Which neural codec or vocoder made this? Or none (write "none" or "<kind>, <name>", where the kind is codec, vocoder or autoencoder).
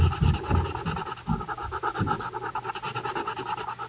none